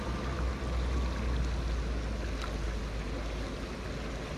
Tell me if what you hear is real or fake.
real